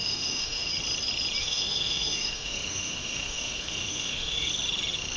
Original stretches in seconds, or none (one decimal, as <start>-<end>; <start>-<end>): 0.7-1.4; 4.5-5.2